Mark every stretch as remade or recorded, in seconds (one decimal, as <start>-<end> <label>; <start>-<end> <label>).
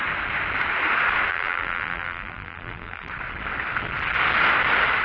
0.0-1.3 recorded; 1.3-3.1 remade; 3.1-5.0 recorded